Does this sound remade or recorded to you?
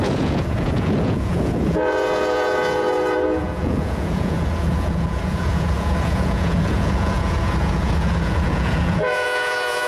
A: remade